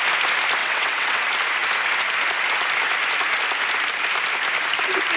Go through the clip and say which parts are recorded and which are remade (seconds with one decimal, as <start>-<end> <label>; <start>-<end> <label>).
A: 0.0-0.6 recorded; 0.6-1.2 remade; 1.2-5.2 recorded